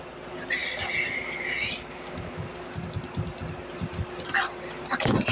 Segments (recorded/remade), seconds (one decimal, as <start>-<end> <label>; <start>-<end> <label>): 0.0-5.3 recorded

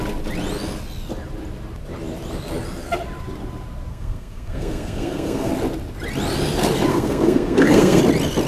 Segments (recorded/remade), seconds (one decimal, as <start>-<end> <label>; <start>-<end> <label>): 0.0-3.9 recorded; 3.9-5.5 remade; 5.5-6.9 recorded; 6.9-8.0 remade; 8.0-8.5 recorded

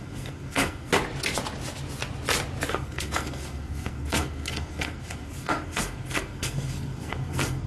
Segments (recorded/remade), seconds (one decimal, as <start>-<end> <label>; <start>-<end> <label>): 0.0-0.9 remade; 0.9-2.7 recorded; 2.7-7.7 remade

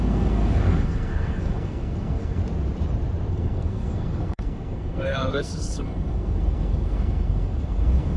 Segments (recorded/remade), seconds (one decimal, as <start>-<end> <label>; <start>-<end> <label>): 0.0-2.4 remade; 2.4-3.3 recorded; 3.3-8.2 remade